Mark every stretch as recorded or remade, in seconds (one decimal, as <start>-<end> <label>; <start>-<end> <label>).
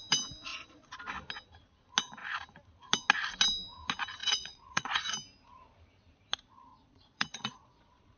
0.0-0.5 recorded; 0.5-1.0 remade; 1.0-4.2 recorded; 4.2-5.0 remade; 5.0-6.7 recorded; 6.7-8.2 remade